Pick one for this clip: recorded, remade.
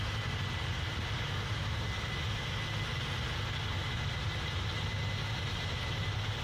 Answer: recorded